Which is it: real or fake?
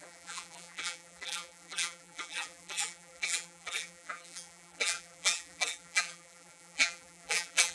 fake